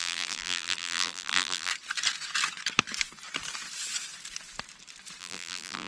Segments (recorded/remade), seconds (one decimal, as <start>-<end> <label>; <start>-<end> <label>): 0.0-1.7 remade; 1.7-5.2 recorded; 5.2-5.9 remade